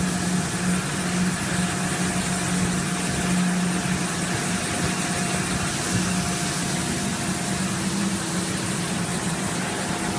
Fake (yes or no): no